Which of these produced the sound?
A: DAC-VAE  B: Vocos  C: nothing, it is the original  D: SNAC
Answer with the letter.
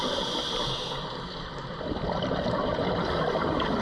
C